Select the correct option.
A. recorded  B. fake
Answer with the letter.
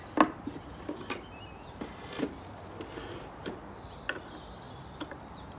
A